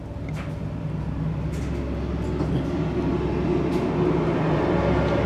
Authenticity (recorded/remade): recorded